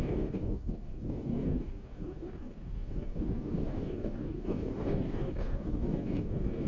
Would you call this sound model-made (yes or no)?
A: yes